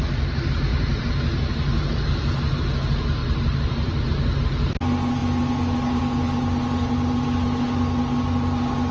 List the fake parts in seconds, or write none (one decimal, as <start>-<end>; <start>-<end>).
0.7-2.6; 3.2-4.0